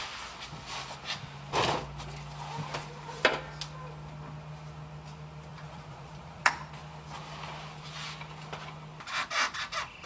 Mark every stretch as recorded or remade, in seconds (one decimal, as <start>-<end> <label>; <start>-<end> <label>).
0.0-5.5 recorded; 5.5-6.5 remade; 6.5-10.1 recorded